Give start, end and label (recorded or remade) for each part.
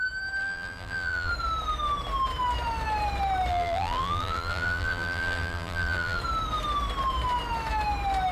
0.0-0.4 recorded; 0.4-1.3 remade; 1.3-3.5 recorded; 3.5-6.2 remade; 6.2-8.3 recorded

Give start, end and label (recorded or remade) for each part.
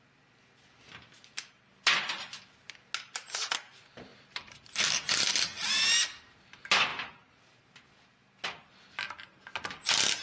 0.0-4.1 recorded; 4.1-5.3 remade; 5.3-10.2 recorded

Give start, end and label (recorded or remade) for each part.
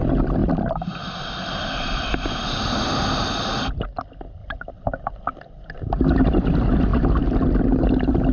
0.0-0.4 recorded; 0.4-3.7 remade; 3.7-8.3 recorded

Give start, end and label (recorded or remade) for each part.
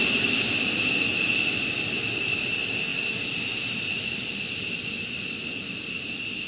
0.0-6.5 recorded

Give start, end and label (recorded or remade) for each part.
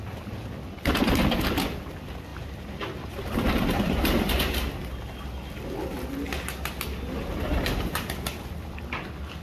0.0-2.3 recorded; 2.3-3.8 remade; 3.8-9.4 recorded